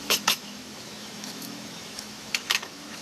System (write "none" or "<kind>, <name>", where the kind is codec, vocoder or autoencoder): autoencoder, DAC-VAE